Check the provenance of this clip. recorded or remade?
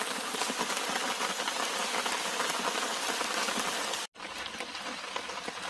recorded